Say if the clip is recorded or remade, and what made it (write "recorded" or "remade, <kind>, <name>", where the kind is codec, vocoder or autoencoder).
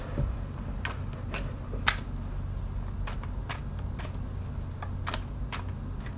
recorded